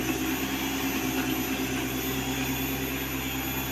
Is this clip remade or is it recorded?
recorded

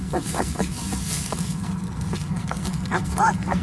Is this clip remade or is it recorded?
remade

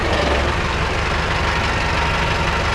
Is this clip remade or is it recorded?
recorded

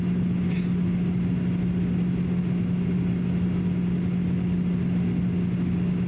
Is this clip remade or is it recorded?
recorded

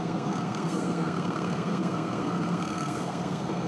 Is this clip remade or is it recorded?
remade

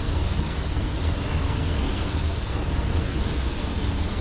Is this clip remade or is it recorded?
remade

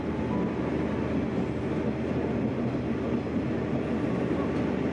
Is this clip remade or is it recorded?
recorded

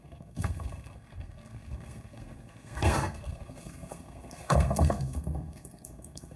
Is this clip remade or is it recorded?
remade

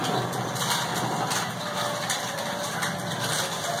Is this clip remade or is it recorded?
recorded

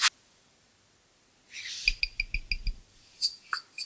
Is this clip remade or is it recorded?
recorded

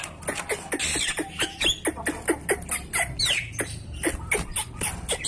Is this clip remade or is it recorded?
recorded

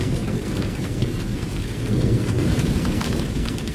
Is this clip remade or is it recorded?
remade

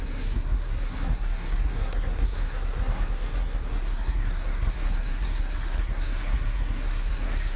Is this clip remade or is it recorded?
remade